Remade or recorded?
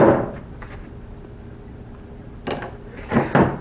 recorded